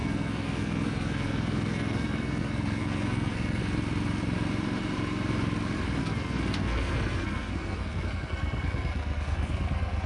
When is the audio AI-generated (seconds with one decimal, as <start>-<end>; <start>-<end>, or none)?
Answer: 0.0-3.6; 6.0-10.1